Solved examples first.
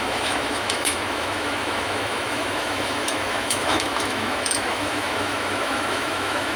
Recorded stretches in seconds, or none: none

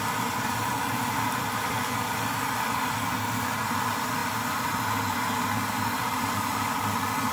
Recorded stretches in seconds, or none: 0.0-7.3

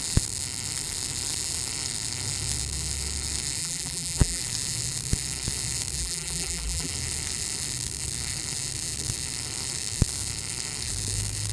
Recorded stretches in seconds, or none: 0.0-3.6; 4.4-6.0; 6.9-11.5

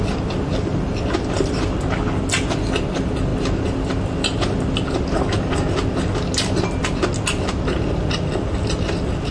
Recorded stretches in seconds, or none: 0.0-9.3

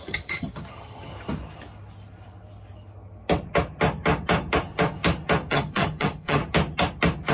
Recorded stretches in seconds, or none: 1.1-5.5; 6.4-7.3

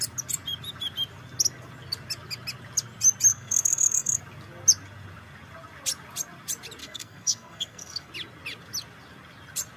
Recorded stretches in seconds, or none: 0.0-3.3; 4.2-6.8; 8.1-9.8

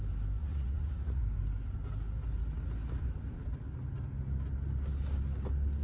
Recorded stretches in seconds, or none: 0.0-0.4; 1.2-5.8

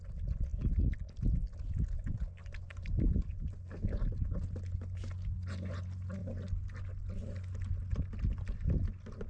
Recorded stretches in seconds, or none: 0.0-9.3